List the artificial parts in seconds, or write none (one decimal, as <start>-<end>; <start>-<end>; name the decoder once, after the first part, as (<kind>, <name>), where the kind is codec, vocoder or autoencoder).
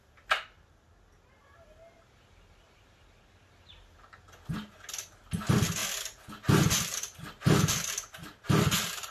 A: none